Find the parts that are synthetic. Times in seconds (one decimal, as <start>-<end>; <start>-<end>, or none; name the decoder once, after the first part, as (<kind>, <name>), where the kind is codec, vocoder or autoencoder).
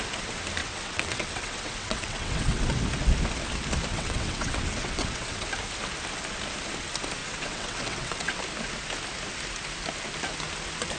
0.6-2.6 (vocoder, WaveNeXt); 3.9-5.5; 7.2-8.4